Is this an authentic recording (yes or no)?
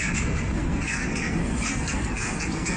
no